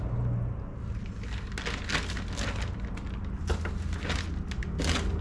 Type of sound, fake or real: real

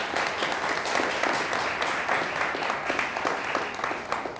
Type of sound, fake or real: real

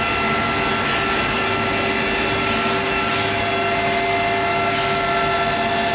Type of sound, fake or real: real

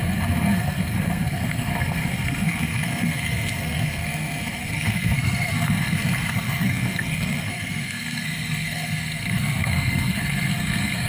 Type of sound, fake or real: fake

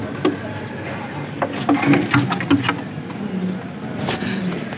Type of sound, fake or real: real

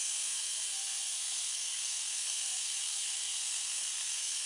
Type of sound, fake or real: fake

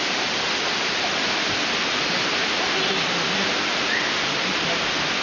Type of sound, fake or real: real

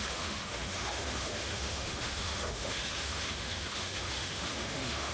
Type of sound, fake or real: fake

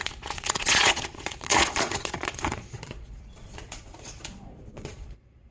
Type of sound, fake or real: fake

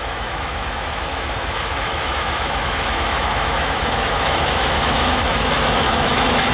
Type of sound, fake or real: fake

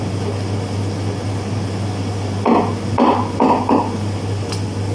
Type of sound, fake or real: real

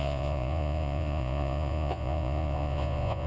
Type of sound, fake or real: fake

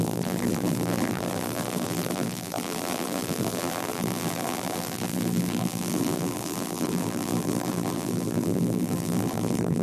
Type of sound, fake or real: fake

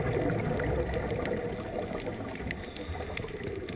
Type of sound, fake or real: real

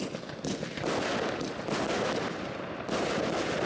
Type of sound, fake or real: real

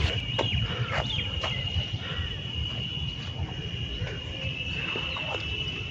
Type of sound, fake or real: real